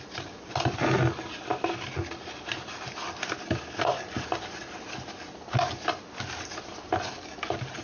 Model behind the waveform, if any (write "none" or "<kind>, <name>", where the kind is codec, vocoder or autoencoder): none